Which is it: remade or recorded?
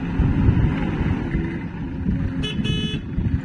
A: recorded